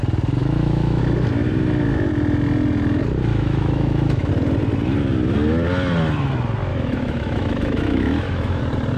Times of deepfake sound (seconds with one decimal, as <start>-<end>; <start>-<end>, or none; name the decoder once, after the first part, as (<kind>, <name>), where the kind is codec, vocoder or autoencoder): 0.4-1.0 (autoencoder, DAC-VAE); 3.3-4.3; 6.7-8.6